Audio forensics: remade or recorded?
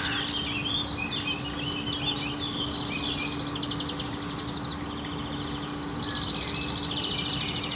recorded